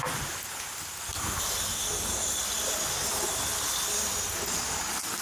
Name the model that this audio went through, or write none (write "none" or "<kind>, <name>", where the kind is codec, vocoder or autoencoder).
none